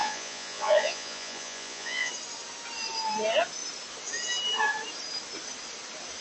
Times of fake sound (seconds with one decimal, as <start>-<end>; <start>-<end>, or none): 0.0-2.1